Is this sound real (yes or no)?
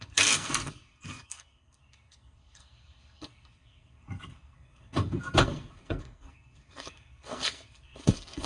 no